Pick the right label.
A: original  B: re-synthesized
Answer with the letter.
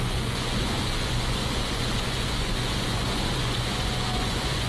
B